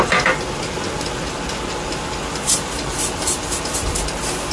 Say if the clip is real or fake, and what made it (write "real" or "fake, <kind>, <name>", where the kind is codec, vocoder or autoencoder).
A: real